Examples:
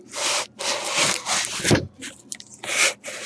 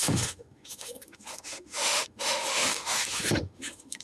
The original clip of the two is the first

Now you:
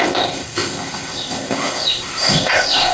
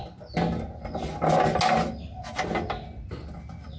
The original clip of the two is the second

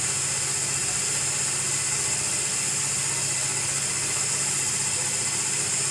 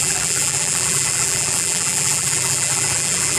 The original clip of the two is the first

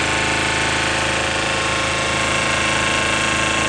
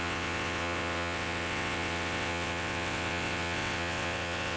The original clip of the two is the first